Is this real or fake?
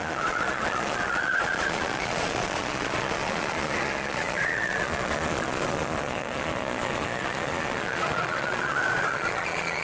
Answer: fake